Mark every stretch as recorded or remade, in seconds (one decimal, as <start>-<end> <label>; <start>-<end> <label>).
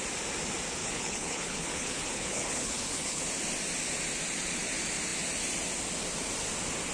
0.0-0.8 recorded; 0.8-3.2 remade; 3.2-6.9 recorded